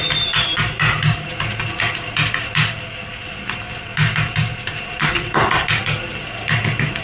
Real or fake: fake